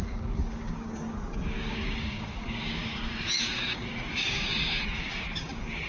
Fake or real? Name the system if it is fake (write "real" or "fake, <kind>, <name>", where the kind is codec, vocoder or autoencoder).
fake, codec, DAC